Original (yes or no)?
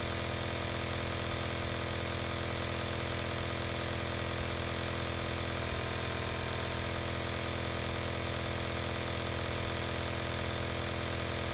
yes